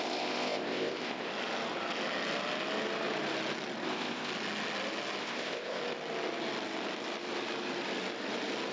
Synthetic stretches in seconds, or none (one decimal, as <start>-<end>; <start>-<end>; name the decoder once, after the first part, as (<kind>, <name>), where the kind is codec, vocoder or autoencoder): 0.0-1.3 (codec, ZipCodec); 3.9-4.3; 5.2-5.8